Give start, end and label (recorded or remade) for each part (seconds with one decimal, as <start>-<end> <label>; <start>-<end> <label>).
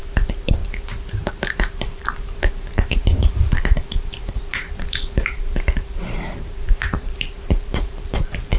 0.0-0.6 remade; 0.6-1.3 recorded; 1.3-8.6 remade